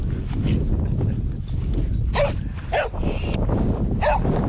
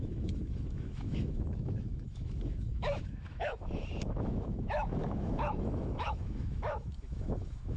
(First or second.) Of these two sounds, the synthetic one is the second